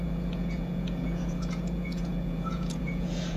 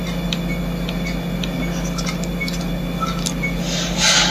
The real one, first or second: second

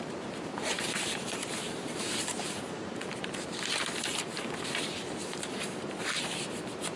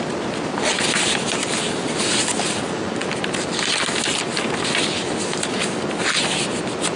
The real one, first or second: second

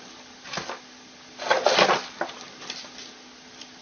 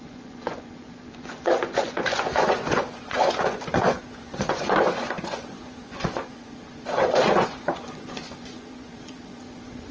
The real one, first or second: first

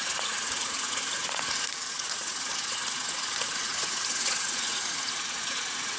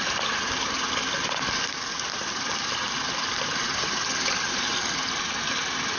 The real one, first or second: second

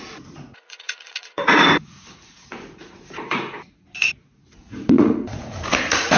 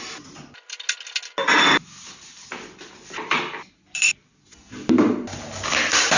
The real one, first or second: second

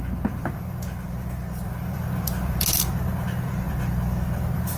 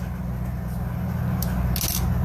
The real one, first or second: second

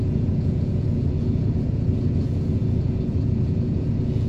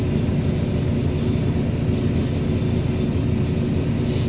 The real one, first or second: second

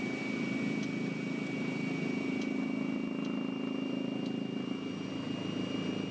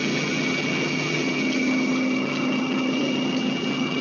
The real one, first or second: first